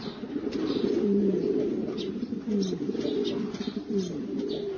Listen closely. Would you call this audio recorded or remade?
recorded